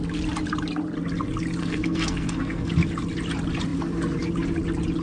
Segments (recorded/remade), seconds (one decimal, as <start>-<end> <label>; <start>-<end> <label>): 0.0-1.6 recorded; 1.6-2.7 remade; 2.7-5.0 recorded